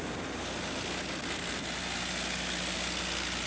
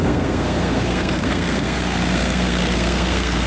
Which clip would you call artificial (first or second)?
second